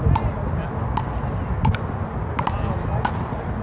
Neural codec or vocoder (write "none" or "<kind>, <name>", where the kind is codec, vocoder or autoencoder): none